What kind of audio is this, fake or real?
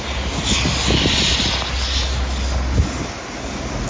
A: real